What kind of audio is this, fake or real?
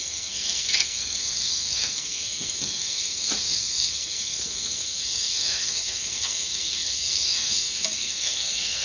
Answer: fake